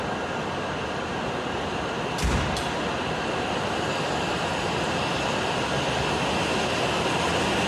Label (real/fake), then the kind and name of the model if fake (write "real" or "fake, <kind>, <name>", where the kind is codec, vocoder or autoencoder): real